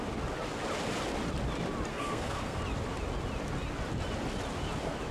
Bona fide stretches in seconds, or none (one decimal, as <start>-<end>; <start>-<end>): 0.0-1.9; 2.6-5.1

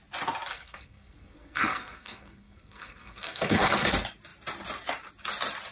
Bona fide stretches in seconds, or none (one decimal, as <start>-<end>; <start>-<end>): 0.0-0.5; 3.9-5.7

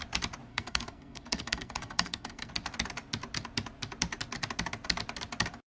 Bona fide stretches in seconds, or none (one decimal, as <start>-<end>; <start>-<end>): 0.0-0.5; 2.5-5.7

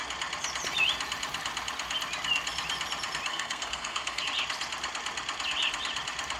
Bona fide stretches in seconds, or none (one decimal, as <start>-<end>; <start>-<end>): 0.0-3.3; 4.2-6.4

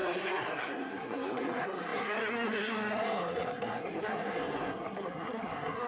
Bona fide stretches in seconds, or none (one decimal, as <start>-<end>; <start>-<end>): none

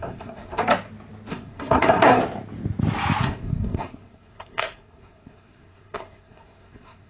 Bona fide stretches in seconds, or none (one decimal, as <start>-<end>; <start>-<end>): 0.6-1.3; 2.2-3.2

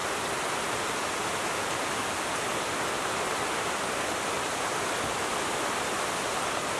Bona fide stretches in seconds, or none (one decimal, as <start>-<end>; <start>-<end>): 0.0-6.8